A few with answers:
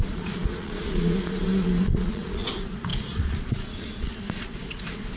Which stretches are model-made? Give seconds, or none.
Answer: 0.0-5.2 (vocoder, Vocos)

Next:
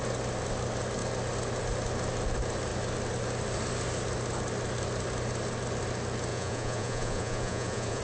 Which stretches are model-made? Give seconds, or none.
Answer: 6.3-8.0 (vocoder, Vocos)

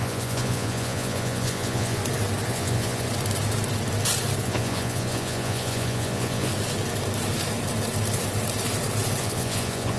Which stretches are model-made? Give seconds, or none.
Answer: 0.0-2.0 (vocoder, Vocos); 2.5-3.1; 4.4-6.5; 9.2-10.0

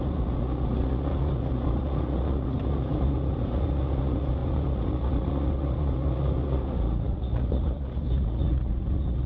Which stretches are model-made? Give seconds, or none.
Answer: 0.0-9.3 (vocoder, Vocos)